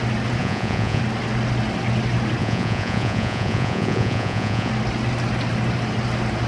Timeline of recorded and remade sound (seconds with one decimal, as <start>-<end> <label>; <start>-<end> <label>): 0.0-0.4 recorded; 0.4-1.0 remade; 1.0-2.4 recorded; 2.4-4.7 remade; 4.7-6.5 recorded